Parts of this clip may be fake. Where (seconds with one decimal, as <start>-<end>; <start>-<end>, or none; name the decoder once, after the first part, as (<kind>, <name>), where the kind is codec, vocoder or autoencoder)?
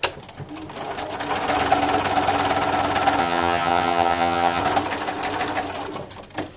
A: 3.2-4.6 (vocoder, HiFi-GAN)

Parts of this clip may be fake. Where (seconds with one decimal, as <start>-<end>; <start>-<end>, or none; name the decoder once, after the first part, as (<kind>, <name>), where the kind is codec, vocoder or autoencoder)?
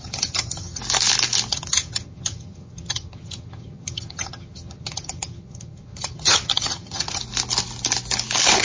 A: 0.0-0.8 (vocoder, HiFi-GAN); 1.5-7.2